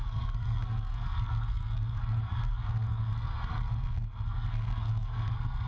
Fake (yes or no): yes